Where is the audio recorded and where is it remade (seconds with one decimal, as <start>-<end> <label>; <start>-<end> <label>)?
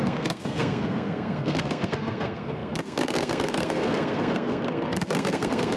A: 0.0-5.8 remade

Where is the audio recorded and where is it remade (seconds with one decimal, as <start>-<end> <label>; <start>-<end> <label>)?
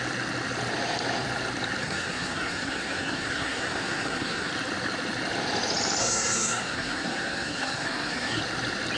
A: 0.0-1.8 recorded; 1.8-4.5 remade; 4.5-6.0 recorded; 6.0-8.4 remade; 8.4-9.0 recorded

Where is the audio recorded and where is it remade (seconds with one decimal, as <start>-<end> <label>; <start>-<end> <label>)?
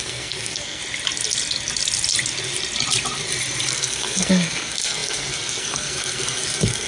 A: 0.0-0.8 remade; 0.8-3.7 recorded; 3.7-6.9 remade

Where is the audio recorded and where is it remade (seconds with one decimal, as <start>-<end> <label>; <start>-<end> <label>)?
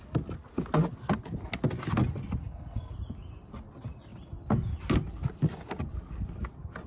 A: 0.0-2.4 recorded; 2.4-2.9 remade; 2.9-6.9 recorded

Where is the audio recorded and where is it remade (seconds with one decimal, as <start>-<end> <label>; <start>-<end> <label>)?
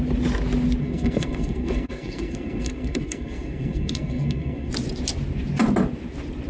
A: 0.0-0.8 recorded; 0.8-4.7 remade; 4.7-6.5 recorded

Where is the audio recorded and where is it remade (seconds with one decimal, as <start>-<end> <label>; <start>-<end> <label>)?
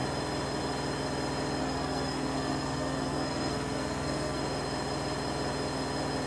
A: 0.0-1.6 recorded; 1.6-4.4 remade; 4.4-6.3 recorded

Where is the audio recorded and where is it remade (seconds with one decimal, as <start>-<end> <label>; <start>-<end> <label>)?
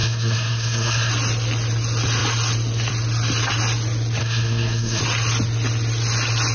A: 0.0-1.1 remade; 1.1-4.2 recorded; 4.2-5.0 remade; 5.0-6.5 recorded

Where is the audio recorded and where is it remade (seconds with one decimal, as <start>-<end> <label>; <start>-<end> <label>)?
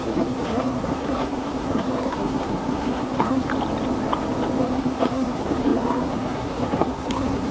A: 0.0-3.5 remade; 3.5-4.6 recorded; 4.6-7.5 remade